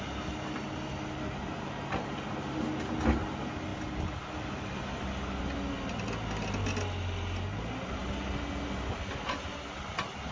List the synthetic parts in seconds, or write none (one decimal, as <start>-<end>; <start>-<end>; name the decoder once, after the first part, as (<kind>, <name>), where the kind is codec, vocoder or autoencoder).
none